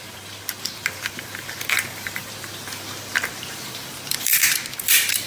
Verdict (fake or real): fake